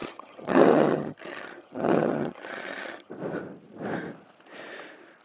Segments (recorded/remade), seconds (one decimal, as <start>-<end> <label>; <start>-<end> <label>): 0.0-3.1 remade; 3.1-5.2 recorded